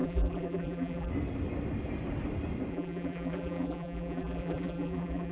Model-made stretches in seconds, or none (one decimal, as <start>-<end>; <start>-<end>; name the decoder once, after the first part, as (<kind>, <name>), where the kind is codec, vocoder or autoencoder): 0.0-1.1 (vocoder, BigVGAN v2); 2.7-5.3